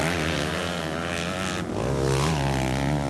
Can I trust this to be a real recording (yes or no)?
yes